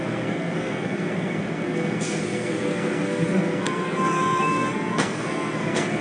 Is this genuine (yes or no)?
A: no